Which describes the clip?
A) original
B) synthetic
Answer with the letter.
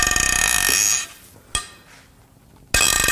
A